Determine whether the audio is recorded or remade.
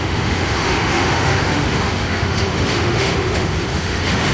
remade